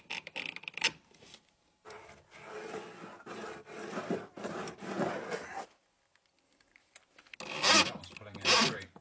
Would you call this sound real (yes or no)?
yes